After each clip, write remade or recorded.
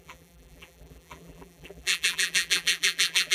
remade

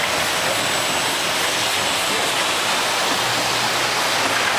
recorded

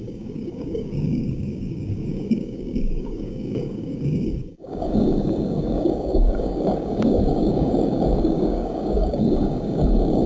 remade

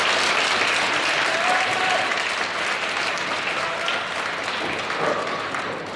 recorded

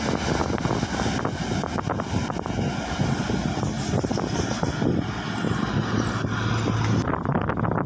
recorded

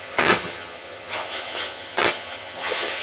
remade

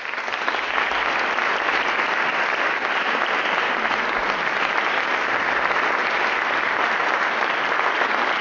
recorded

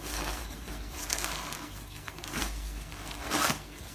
remade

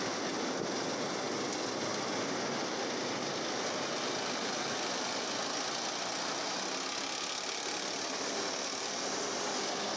recorded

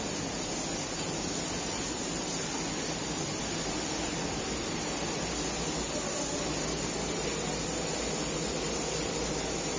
recorded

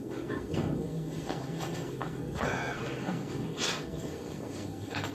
remade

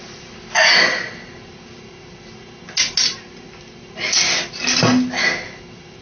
recorded